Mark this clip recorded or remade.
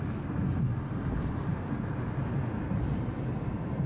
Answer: recorded